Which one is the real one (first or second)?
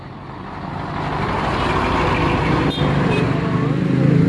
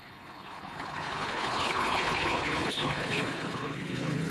first